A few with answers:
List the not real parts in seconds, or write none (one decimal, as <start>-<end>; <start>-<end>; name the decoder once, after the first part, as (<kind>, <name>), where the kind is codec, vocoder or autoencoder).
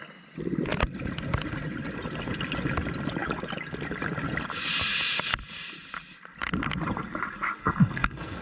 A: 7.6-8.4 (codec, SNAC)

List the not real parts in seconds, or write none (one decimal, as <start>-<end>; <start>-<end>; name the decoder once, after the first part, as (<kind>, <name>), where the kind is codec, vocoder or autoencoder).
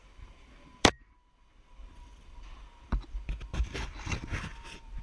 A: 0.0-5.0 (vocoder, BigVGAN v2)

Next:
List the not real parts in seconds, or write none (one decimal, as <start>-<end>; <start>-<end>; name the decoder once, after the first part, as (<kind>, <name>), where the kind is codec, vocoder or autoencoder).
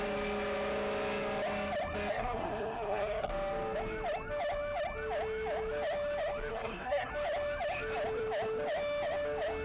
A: 2.1-3.3 (codec, SNAC); 6.5-7.1